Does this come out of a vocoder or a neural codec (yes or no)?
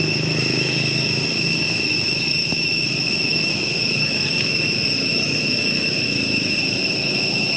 yes